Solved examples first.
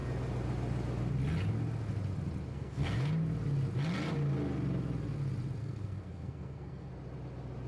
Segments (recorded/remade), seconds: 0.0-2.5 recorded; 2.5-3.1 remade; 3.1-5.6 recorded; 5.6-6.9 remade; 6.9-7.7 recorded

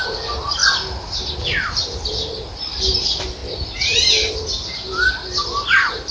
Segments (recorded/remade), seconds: 0.0-6.1 recorded

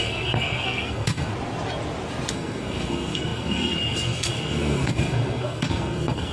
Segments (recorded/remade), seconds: 0.0-1.3 remade; 1.3-2.3 recorded; 2.3-6.3 remade

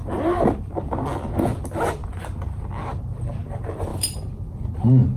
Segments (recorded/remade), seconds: 0.0-5.2 recorded